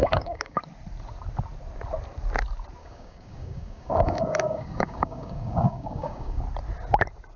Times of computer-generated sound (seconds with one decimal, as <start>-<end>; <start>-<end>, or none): 0.0-0.6; 2.8-6.4

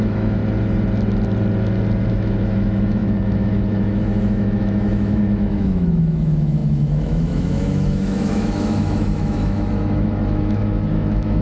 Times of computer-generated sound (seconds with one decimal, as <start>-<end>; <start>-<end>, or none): 0.0-0.4; 2.1-11.4

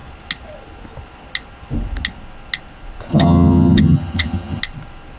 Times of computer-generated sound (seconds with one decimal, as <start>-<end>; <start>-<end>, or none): 3.1-4.6